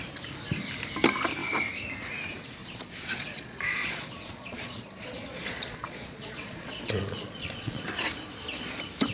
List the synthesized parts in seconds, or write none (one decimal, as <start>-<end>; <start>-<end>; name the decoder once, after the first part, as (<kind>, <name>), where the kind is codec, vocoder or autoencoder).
2.6-7.8 (vocoder, Vocos)